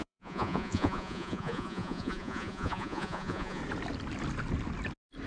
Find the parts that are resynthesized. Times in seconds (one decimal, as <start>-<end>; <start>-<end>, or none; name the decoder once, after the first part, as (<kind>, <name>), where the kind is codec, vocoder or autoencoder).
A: 0.0-3.6 (vocoder, Vocos)

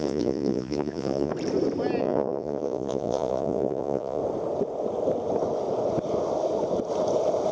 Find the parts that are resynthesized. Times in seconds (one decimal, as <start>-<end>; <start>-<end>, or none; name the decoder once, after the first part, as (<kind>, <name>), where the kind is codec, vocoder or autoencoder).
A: 0.0-1.3 (vocoder, Vocos); 2.0-4.2

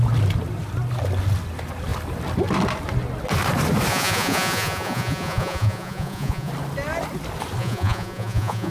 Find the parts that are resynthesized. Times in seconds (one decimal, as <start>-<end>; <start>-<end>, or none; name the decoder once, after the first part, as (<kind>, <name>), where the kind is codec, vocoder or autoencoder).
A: 3.9-6.5 (vocoder, Vocos); 7.6-8.7

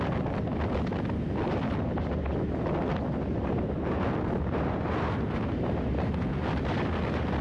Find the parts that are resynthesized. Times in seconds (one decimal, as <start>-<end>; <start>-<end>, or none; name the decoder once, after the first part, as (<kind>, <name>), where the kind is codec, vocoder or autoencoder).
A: none